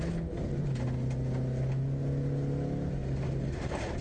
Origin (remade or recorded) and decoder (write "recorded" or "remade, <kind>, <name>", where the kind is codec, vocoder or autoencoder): recorded